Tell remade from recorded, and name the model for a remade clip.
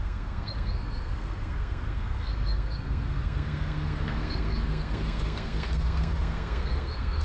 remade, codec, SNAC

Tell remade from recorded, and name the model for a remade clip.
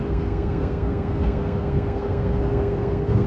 remade, codec, SNAC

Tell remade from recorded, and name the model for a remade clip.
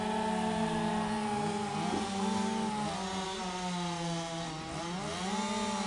recorded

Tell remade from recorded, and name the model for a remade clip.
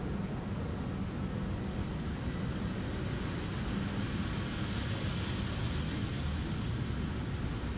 recorded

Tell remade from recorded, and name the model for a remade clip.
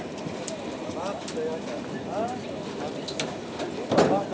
recorded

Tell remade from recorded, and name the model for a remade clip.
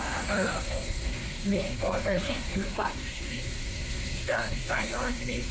remade, codec, SNAC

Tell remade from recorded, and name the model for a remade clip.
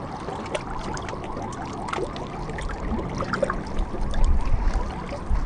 recorded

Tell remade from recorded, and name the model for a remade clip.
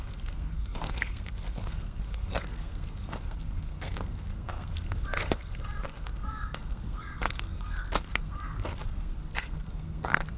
remade, codec, SNAC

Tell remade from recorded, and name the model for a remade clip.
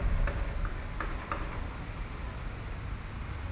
recorded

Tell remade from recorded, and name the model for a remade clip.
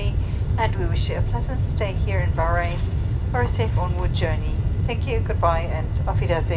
recorded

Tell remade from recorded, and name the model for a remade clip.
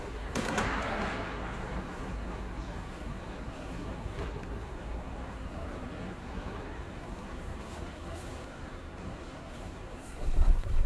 remade, codec, SNAC